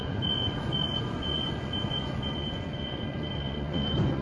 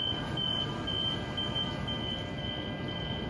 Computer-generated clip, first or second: first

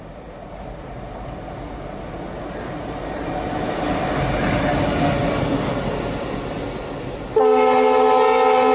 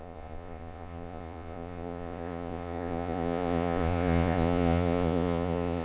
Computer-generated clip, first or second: second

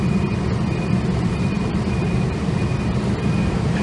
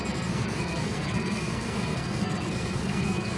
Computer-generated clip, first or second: second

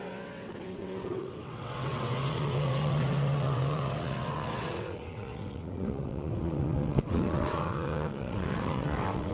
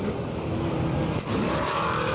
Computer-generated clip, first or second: first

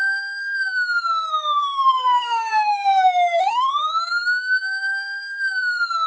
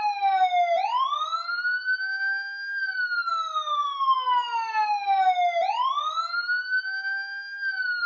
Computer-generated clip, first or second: first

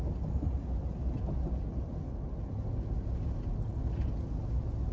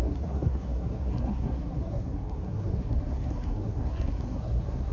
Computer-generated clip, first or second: second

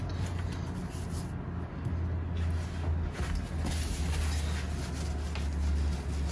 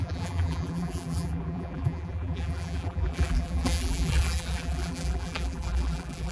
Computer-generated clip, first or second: second